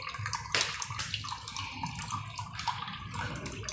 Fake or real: real